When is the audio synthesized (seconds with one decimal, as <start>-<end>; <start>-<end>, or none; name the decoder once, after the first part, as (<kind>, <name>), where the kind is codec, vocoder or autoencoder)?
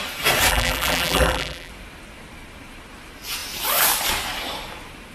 0.5-1.7 (vocoder, BigVGAN v2)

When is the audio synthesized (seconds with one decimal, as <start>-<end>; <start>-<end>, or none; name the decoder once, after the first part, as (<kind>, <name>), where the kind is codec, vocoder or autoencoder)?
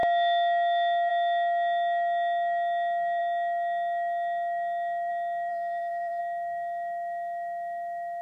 5.5-6.2 (vocoder, BigVGAN v2)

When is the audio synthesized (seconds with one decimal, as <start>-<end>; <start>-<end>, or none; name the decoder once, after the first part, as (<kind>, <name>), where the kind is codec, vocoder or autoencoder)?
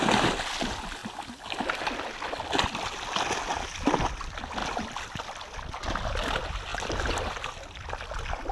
none